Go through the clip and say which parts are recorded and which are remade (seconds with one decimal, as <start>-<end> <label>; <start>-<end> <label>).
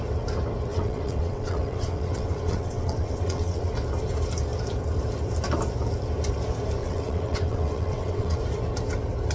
0.0-0.7 recorded; 0.7-3.7 remade; 3.7-6.8 recorded; 6.8-8.4 remade; 8.4-9.3 recorded